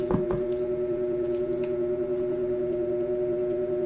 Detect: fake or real fake